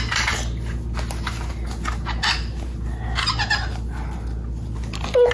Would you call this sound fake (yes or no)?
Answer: no